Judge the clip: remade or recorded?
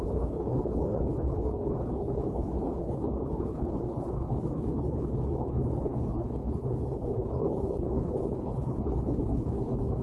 remade